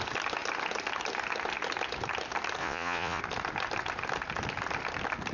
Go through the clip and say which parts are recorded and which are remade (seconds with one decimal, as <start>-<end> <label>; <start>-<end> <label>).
0.0-2.6 recorded; 2.6-3.2 remade; 3.2-5.3 recorded